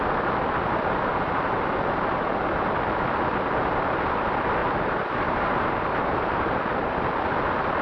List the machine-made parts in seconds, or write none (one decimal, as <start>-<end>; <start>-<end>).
1.1-2.5; 4.6-7.1